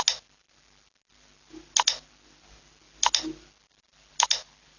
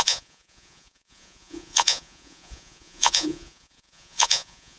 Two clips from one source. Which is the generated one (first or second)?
second